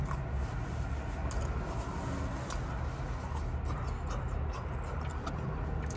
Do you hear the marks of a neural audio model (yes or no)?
no